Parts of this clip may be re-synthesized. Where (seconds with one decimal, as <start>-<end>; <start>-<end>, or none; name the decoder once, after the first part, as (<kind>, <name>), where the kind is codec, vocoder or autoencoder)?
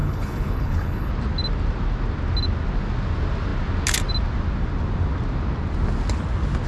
0.0-1.1 (codec, HILCodec)